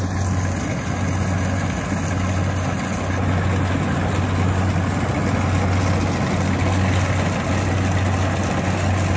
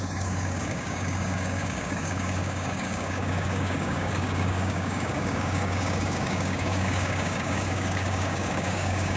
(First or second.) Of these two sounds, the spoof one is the second